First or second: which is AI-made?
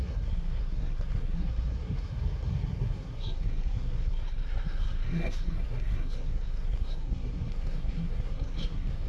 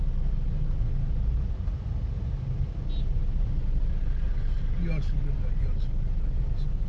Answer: first